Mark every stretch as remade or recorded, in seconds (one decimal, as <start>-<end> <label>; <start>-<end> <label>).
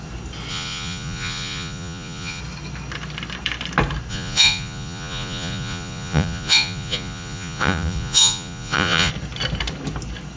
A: 0.0-0.5 recorded; 0.5-2.4 remade; 2.4-4.1 recorded; 4.1-9.1 remade; 9.1-10.4 recorded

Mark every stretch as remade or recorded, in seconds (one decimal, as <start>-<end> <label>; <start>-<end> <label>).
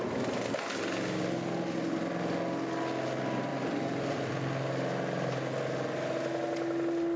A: 0.0-3.5 recorded; 3.5-4.3 remade; 4.3-7.2 recorded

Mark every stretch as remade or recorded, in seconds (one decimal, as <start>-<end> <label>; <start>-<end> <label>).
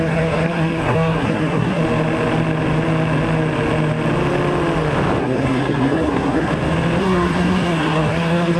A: 0.0-1.8 remade; 1.8-5.2 recorded; 5.2-6.5 remade; 6.5-7.0 recorded; 7.0-8.6 remade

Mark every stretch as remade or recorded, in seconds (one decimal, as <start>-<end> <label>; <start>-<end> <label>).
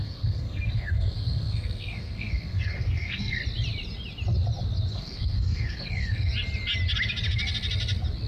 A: 0.0-3.4 remade; 3.4-4.9 recorded; 4.9-6.3 remade; 6.3-8.3 recorded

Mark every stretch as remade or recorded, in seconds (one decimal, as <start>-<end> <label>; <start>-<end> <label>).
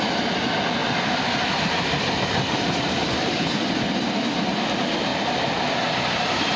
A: 0.0-0.8 recorded; 0.8-3.5 remade; 3.5-6.6 recorded